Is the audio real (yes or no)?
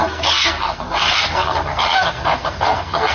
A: no